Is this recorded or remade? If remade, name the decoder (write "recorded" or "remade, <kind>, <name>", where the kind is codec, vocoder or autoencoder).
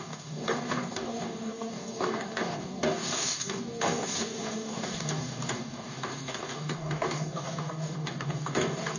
remade, codec, DAC